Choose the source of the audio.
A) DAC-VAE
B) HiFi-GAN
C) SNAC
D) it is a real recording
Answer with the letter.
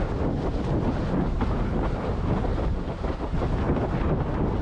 D